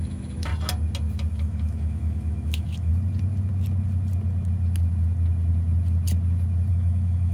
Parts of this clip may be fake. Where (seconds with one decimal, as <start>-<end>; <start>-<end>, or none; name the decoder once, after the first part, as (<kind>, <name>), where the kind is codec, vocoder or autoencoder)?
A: 0.0-0.5 (autoencoder, DAC-VAE); 1.3-2.9; 6.7-7.3